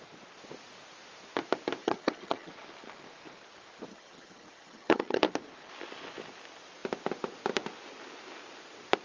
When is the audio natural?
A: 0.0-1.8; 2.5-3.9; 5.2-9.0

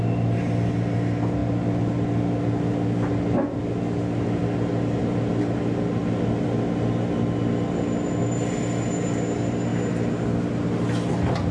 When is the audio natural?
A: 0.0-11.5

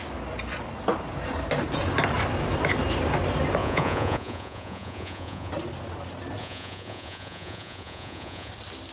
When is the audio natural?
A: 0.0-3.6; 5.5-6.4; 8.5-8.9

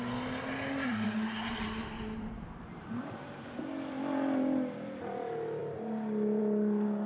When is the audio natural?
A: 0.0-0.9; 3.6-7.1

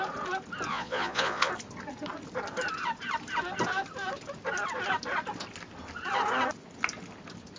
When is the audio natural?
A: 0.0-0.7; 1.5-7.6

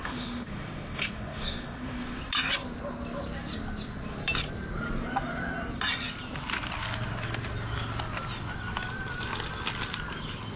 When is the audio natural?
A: 2.2-10.6

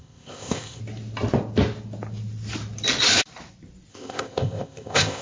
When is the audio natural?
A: 0.8-3.9